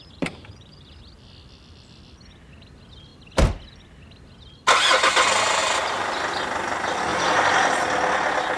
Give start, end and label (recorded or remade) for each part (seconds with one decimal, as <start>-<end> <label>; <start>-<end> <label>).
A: 0.0-0.9 remade; 0.9-7.1 recorded; 7.1-7.7 remade; 7.7-8.6 recorded

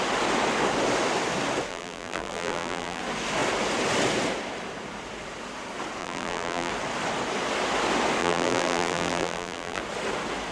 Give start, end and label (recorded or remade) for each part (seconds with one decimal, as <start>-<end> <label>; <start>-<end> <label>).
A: 0.0-1.7 recorded; 1.7-3.0 remade; 3.0-6.0 recorded; 6.0-6.7 remade; 6.7-8.2 recorded; 8.2-9.8 remade; 9.8-10.5 recorded

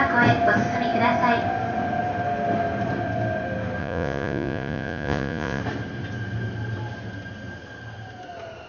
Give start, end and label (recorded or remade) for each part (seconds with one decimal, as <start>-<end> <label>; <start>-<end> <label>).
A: 0.0-3.8 recorded; 3.8-5.6 remade; 5.6-8.7 recorded

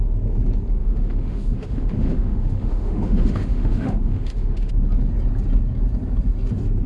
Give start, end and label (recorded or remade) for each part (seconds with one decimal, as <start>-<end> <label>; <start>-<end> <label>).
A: 0.0-0.8 recorded; 0.8-4.7 remade; 4.7-6.9 recorded

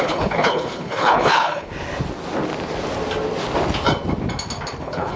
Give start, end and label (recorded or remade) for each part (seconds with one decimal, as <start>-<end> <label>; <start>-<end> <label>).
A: 0.0-1.7 remade; 1.7-4.8 recorded; 4.8-5.2 remade

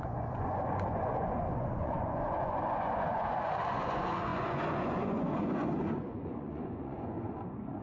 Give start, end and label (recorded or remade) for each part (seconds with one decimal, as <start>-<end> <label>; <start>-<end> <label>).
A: 0.0-7.8 remade